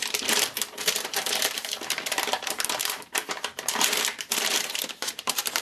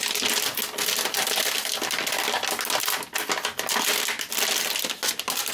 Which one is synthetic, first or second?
first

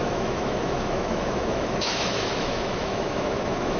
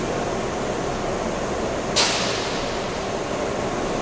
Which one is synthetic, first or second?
first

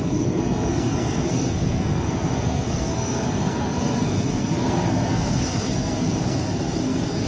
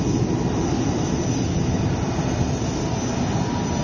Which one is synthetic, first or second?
first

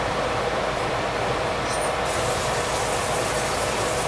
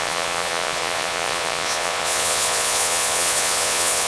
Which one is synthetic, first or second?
second